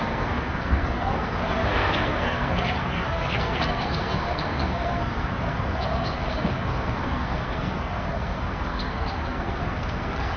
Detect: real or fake fake